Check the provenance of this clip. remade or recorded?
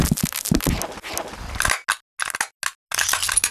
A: recorded